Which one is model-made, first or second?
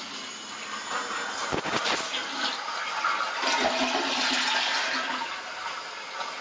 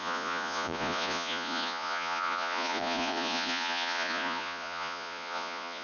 second